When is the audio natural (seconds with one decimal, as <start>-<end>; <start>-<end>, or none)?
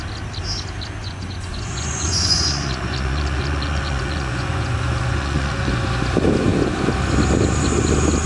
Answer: 0.0-1.0; 5.7-8.3